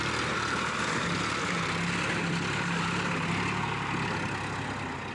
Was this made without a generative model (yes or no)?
yes